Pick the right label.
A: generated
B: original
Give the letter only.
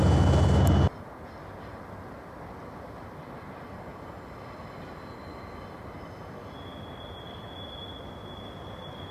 B